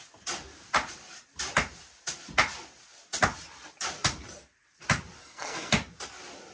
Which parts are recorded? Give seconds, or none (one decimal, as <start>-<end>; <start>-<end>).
0.0-5.2; 5.7-6.5